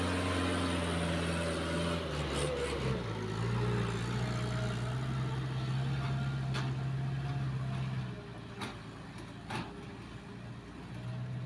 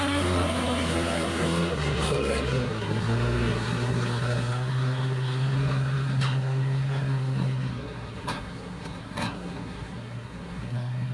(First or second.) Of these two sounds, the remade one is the second